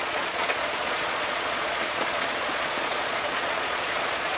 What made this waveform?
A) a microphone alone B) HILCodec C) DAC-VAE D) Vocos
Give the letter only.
D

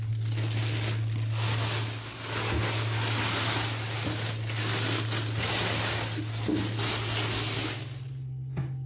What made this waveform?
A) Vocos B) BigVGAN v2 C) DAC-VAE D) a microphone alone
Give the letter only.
D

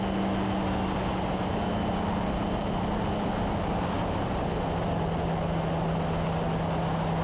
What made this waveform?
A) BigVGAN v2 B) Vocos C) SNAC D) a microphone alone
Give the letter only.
D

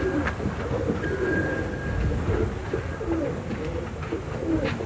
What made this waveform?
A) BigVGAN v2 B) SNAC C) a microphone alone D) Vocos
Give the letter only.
C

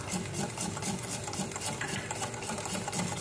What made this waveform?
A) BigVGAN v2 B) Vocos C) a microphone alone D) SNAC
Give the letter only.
C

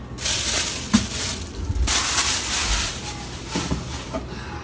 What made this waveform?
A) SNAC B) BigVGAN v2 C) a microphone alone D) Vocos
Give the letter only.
C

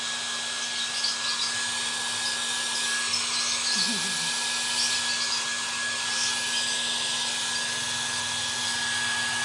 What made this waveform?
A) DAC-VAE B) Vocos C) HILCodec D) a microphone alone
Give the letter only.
D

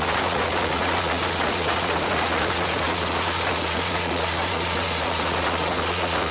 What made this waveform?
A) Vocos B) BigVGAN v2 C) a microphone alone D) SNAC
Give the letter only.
A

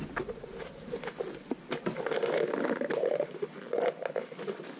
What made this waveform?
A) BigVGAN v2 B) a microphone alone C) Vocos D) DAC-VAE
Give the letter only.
B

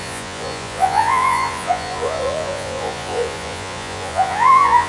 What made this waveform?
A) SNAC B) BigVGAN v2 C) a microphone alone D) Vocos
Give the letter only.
D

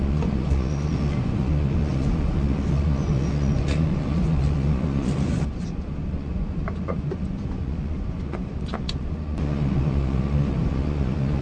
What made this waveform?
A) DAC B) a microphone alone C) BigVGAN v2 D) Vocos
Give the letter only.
D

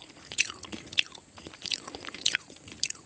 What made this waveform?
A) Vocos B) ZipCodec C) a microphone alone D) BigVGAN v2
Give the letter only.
A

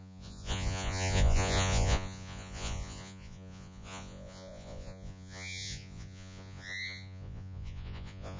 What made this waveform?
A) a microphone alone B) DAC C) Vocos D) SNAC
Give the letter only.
C